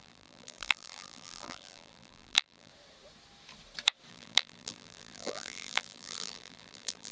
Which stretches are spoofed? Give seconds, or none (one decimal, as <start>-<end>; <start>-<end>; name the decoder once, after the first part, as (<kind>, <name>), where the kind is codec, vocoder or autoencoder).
0.0-2.7 (vocoder, BigVGAN v2); 4.1-7.1